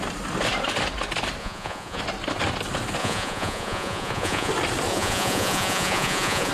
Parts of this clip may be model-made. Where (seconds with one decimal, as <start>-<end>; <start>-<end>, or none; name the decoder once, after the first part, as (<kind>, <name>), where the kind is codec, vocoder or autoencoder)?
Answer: 1.4-2.0 (vocoder, Vocos); 3.0-4.5; 4.9-6.5